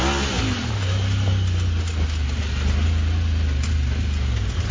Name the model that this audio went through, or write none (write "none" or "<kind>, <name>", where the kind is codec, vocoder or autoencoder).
none